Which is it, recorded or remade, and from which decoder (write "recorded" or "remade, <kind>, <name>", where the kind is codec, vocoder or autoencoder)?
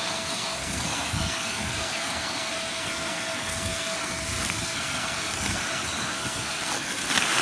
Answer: remade, codec, SNAC